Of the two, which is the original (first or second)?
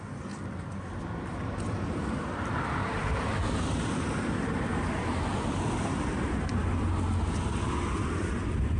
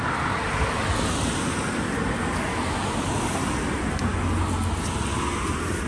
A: second